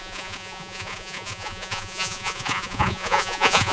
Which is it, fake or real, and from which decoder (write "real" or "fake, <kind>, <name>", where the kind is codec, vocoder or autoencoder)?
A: fake, vocoder, Vocos